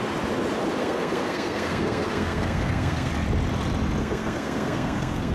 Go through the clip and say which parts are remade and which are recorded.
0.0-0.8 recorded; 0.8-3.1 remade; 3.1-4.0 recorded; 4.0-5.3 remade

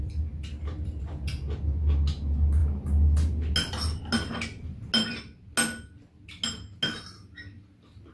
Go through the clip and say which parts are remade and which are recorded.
0.0-8.1 recorded

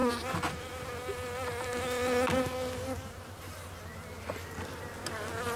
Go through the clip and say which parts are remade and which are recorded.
0.0-5.6 recorded